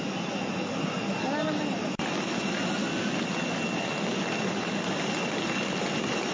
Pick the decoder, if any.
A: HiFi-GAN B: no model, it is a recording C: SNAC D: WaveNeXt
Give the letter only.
B